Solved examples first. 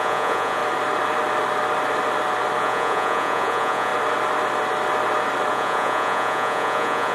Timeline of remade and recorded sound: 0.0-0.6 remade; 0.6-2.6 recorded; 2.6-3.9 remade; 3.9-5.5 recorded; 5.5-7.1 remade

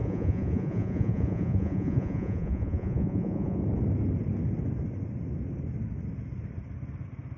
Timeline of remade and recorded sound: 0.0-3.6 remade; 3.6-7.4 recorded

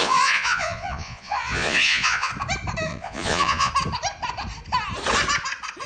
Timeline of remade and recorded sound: 0.0-2.3 remade; 2.3-2.9 recorded; 2.9-3.7 remade; 3.7-5.9 recorded